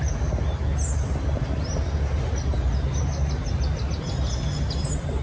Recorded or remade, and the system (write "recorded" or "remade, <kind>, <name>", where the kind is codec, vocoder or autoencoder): recorded